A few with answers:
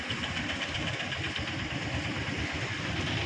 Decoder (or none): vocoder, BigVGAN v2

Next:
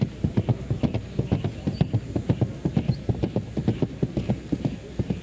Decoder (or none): none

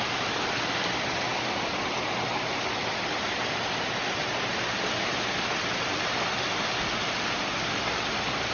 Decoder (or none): none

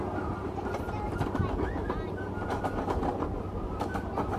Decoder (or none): none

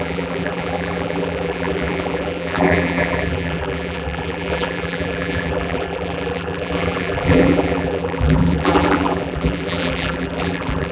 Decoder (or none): vocoder, BigVGAN v2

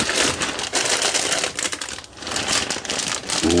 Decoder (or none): none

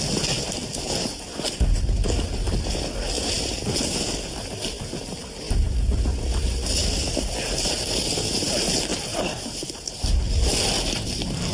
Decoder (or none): none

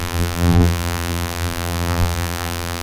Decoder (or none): vocoder, BigVGAN v2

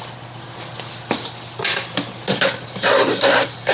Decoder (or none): none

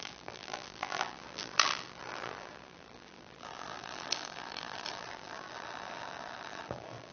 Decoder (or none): vocoder, BigVGAN v2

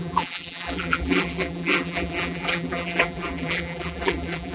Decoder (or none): vocoder, BigVGAN v2